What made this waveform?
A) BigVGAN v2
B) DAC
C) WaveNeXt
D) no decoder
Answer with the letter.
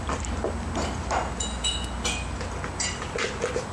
D